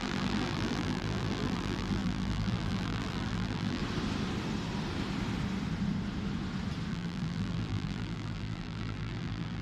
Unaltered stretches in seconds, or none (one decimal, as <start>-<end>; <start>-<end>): 3.8-6.9